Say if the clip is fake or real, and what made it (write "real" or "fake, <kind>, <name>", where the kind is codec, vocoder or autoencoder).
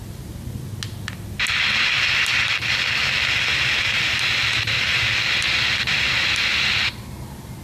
real